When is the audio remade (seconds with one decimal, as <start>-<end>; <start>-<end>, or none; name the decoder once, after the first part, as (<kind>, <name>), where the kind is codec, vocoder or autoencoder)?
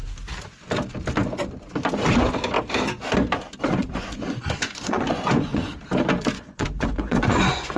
3.6-5.7 (vocoder, Vocos); 6.2-7.8